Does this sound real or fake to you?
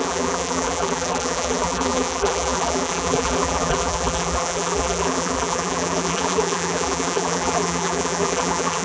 fake